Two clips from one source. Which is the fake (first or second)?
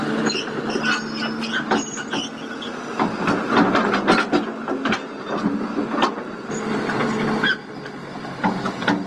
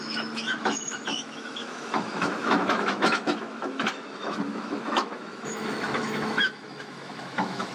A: second